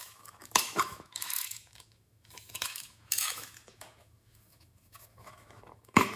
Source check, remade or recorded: remade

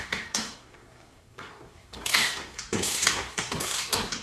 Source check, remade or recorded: remade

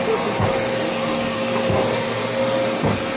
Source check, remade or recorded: recorded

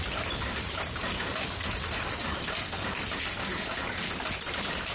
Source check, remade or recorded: recorded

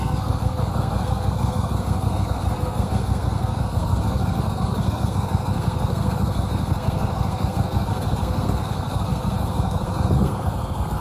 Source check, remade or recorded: remade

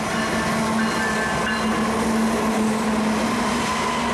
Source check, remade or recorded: recorded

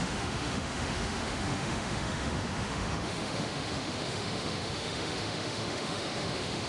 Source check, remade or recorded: remade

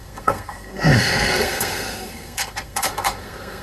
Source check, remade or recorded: remade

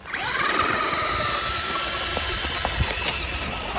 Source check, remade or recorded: recorded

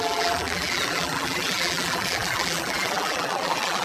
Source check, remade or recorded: remade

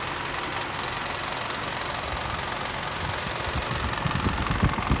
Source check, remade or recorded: recorded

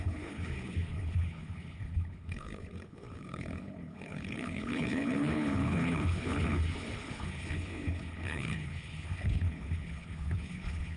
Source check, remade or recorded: remade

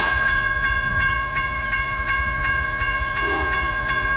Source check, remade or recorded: remade